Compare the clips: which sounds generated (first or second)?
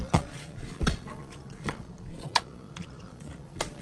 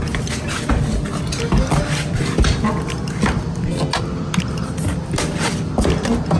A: first